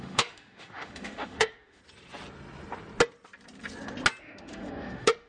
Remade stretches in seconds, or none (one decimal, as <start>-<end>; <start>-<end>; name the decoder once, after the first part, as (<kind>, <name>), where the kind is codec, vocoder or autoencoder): 0.0-1.8 (autoencoder, DAC-VAE); 4.2-5.3

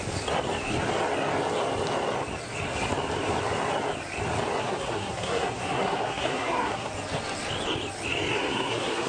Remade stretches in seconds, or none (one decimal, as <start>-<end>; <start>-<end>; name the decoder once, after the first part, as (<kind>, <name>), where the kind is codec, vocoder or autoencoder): 4.6-6.9 (codec, SNAC); 8.3-9.1

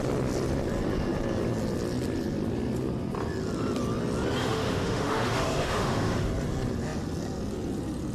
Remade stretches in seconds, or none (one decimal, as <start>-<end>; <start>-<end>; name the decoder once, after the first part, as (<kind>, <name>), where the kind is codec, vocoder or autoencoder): 4.4-6.3 (autoencoder, DAC-VAE)

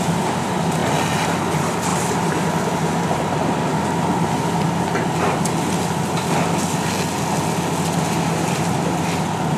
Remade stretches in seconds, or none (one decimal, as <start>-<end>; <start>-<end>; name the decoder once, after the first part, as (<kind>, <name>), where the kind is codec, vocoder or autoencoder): 0.0-0.8 (vocoder, BigVGAN v2); 1.4-1.9; 2.7-3.7; 8.0-9.6

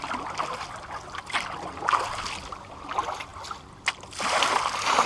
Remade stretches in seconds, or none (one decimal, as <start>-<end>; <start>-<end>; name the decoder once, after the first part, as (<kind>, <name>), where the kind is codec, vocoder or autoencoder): none